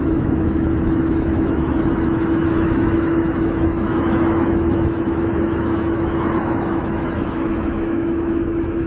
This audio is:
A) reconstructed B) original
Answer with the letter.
A